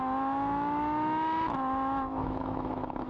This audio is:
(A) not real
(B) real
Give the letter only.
A